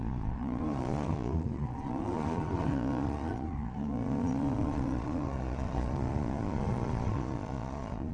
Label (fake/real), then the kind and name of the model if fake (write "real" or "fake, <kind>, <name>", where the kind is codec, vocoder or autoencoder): fake, vocoder, Vocos